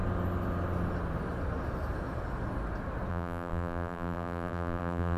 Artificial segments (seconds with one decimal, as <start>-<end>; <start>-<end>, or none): 3.1-5.2